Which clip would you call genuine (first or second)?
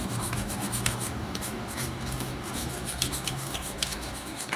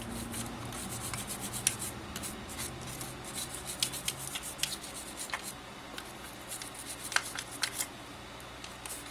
second